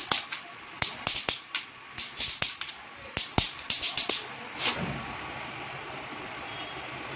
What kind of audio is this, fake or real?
real